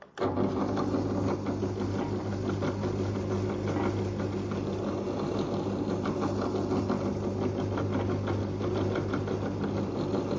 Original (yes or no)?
yes